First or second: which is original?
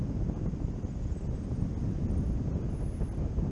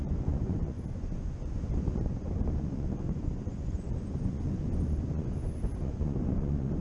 first